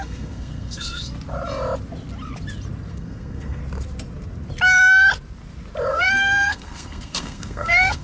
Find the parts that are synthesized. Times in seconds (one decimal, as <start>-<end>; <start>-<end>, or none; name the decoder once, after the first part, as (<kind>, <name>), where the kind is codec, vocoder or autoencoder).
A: 0.0-1.1 (codec, SNAC); 2.9-3.6; 5.9-8.0

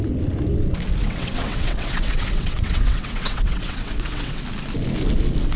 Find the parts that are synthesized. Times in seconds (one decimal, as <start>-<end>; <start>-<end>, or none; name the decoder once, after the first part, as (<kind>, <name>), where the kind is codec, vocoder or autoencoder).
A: 1.0-4.4 (vocoder, WaveNeXt)